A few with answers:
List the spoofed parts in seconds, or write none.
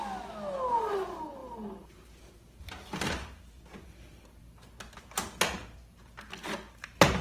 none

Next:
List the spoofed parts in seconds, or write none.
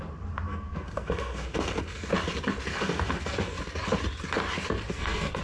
0.5-2.1 (codec, SNAC); 2.7-3.6; 4.9-5.4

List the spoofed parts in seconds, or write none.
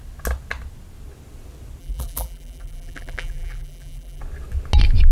1.8-4.2 (vocoder, BigVGAN v2)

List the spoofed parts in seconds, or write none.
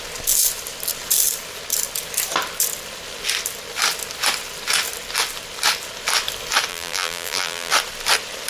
6.7-7.7 (vocoder, BigVGAN v2)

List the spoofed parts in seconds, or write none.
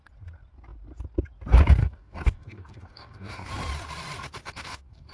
1.8-3.5 (codec, DAC); 4.4-5.1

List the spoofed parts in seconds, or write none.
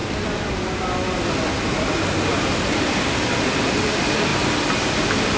none